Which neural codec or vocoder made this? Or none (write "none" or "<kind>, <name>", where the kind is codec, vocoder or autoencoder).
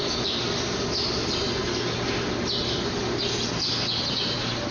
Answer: none